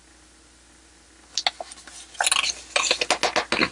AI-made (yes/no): no